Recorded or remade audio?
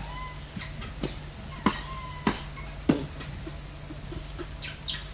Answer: recorded